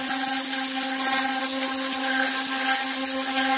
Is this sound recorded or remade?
recorded